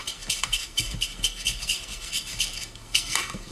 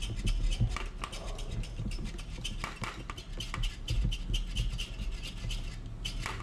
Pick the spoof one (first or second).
first